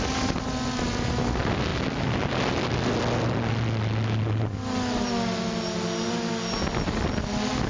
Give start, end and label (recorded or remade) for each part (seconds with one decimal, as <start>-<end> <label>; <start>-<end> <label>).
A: 0.0-7.7 recorded